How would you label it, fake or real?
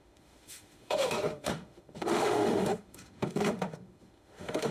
fake